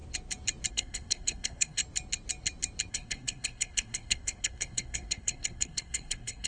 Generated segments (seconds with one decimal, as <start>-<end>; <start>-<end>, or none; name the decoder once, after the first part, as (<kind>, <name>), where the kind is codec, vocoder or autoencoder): 0.7-1.8 (codec, SNAC); 2.9-6.5